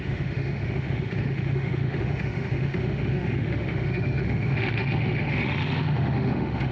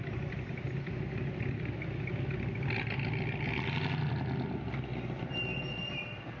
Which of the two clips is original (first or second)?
second